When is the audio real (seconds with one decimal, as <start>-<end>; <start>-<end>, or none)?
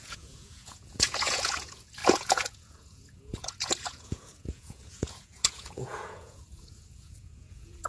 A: none